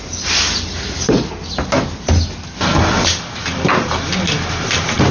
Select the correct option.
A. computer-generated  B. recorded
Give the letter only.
B